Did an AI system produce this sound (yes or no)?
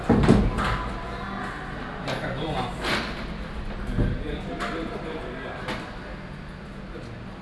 no